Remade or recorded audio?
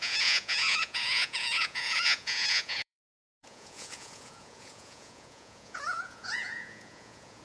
remade